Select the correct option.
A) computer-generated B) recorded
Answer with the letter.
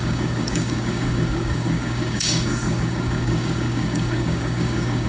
A